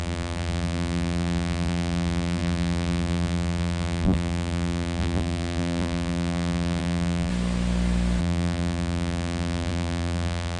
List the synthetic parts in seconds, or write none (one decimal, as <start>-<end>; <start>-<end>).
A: 0.0-7.3; 8.2-10.6